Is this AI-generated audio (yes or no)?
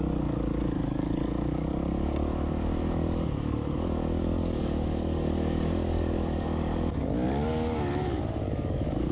yes